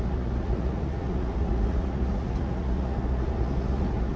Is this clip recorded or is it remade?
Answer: remade